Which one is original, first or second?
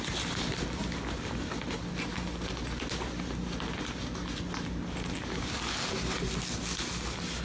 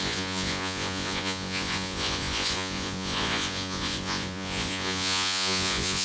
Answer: first